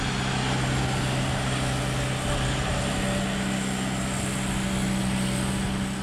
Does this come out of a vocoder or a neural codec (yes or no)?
no